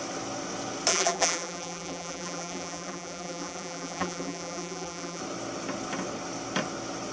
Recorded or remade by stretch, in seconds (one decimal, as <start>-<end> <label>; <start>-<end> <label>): 0.0-0.9 recorded; 0.9-5.2 remade; 5.2-7.1 recorded